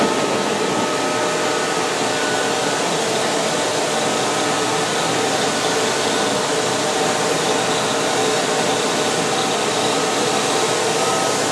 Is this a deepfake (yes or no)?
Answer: no